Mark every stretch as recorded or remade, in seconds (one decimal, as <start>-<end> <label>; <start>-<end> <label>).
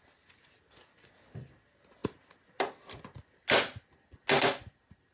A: 0.0-5.1 recorded